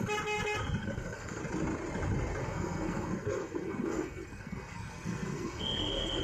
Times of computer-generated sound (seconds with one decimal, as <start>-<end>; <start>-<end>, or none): 0.8-1.4; 2.4-6.2